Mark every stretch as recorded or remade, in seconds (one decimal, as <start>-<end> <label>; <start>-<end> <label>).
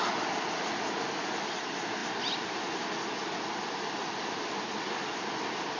0.0-5.8 recorded